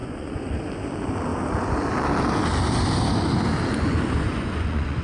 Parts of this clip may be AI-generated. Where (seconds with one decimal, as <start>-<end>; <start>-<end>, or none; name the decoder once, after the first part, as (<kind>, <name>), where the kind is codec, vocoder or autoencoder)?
0.0-0.6 (vocoder, Vocos); 3.7-5.0